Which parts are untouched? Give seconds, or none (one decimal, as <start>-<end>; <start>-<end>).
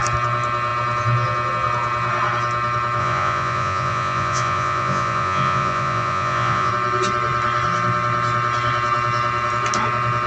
0.0-3.0; 6.7-10.3